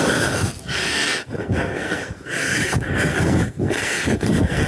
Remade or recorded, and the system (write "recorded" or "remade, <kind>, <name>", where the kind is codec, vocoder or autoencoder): remade, codec, SNAC